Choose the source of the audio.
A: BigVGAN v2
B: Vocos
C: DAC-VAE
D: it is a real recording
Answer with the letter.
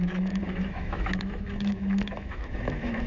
C